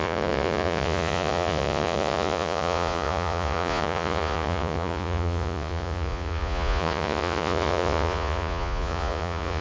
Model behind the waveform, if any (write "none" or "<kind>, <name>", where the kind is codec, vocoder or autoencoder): vocoder, Vocos